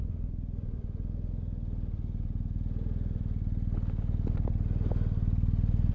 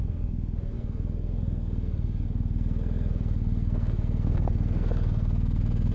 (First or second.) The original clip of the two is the first